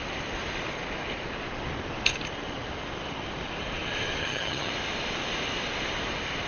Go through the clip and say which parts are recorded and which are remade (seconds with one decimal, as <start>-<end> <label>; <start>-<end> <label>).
0.0-4.2 recorded; 4.2-4.7 remade; 4.7-6.5 recorded

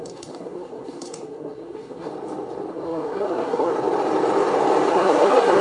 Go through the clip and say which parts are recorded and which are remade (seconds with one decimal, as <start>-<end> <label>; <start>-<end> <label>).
0.0-2.1 remade; 2.1-2.7 recorded; 2.7-3.7 remade; 3.7-4.9 recorded; 4.9-5.6 remade

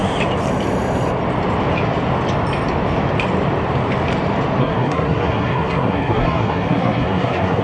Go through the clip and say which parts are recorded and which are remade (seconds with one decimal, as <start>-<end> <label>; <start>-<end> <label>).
0.0-4.6 recorded; 4.6-7.6 remade

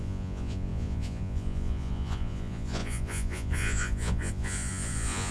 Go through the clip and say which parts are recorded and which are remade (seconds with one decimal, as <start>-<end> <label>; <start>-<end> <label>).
0.0-5.3 remade

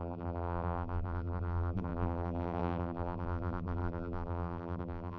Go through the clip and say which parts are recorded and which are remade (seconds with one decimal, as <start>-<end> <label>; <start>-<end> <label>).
0.0-5.2 remade

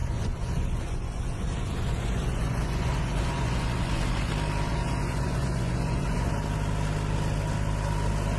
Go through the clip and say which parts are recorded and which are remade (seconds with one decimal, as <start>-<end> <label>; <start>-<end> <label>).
0.0-4.3 remade; 4.3-4.7 recorded; 4.7-6.3 remade; 6.3-8.4 recorded